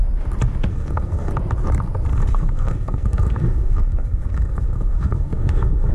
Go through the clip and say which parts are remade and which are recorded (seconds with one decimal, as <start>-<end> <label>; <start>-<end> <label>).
0.0-0.7 recorded; 0.7-1.3 remade; 1.3-2.1 recorded; 2.1-5.9 remade